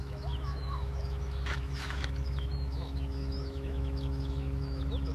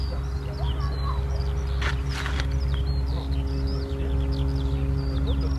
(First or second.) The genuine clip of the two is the second